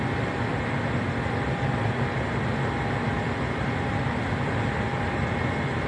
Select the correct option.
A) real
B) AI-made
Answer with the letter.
A